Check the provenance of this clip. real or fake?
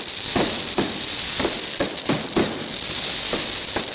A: real